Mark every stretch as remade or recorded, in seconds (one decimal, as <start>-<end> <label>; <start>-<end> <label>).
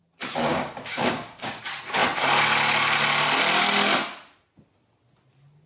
0.0-0.5 recorded; 0.5-1.6 remade; 1.6-5.7 recorded